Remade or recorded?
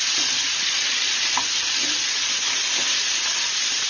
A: recorded